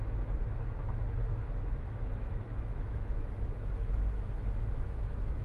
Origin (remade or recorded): remade